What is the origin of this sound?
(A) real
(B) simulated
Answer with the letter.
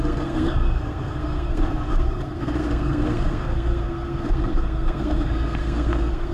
B